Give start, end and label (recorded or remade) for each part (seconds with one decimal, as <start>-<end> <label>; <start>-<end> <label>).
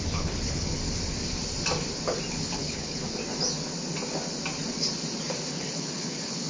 0.0-0.8 remade; 0.8-2.3 recorded; 2.3-3.2 remade; 3.2-5.6 recorded; 5.6-6.5 remade